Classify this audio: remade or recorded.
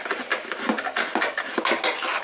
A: recorded